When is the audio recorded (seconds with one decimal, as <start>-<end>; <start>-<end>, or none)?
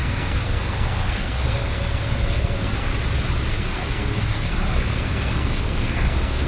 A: 2.9-3.5